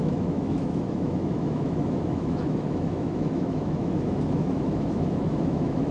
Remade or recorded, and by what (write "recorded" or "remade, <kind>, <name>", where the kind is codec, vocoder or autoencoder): remade, autoencoder, DAC-VAE